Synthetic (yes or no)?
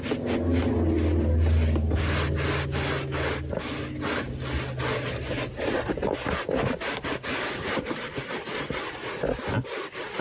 no